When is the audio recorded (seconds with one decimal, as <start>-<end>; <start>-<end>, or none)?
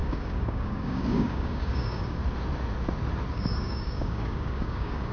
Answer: 2.2-3.3